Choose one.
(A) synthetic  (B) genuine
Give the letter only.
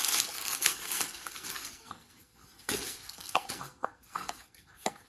A